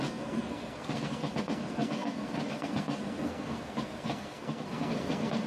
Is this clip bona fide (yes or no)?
no